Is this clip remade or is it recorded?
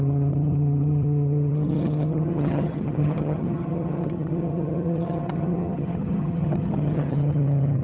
remade